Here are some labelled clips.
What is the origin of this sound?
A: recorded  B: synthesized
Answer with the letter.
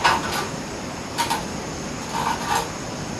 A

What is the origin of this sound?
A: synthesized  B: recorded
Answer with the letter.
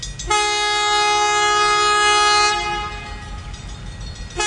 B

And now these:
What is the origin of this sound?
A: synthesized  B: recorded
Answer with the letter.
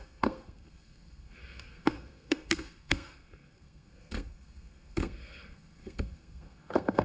A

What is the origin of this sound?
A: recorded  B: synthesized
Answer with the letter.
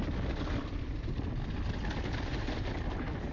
A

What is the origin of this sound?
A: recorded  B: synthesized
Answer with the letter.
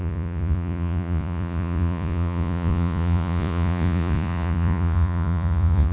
B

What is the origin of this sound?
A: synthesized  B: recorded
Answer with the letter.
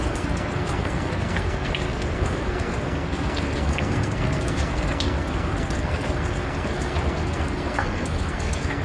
A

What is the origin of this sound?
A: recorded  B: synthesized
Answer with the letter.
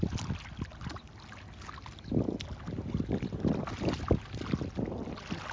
A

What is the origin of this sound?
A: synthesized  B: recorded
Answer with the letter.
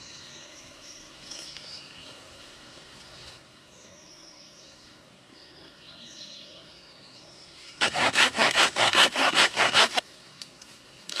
A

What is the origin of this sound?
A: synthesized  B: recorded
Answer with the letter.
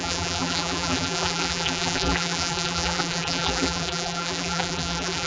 A